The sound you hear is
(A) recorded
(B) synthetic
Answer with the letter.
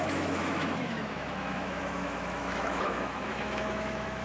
B